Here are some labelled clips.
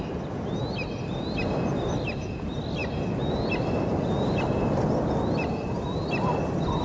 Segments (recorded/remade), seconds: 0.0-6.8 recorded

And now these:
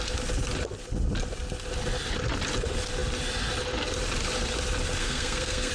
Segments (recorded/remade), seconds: 0.0-5.0 recorded; 5.0-5.7 remade

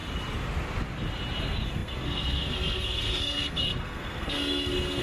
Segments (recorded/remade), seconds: 0.0-1.4 recorded; 1.4-5.0 remade

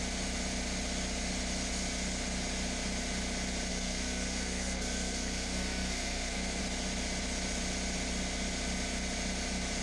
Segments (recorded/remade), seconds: 0.0-3.7 recorded; 3.7-6.6 remade; 6.6-9.8 recorded

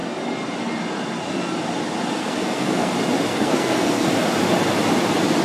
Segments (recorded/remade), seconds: 0.0-2.2 recorded; 2.2-2.9 remade; 2.9-3.3 recorded; 3.3-4.1 remade; 4.1-5.4 recorded

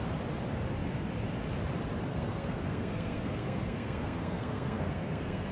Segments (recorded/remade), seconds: 0.0-2.1 recorded; 2.1-5.5 remade